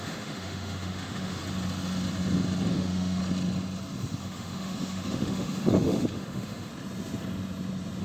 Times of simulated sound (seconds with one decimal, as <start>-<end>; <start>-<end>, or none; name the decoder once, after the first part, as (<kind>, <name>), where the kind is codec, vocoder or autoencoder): 0.0-1.4 (autoencoder, DAC-VAE); 2.7-3.2; 4.2-6.7